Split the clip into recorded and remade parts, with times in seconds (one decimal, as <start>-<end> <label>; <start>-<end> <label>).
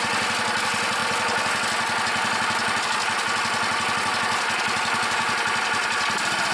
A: 0.0-6.5 recorded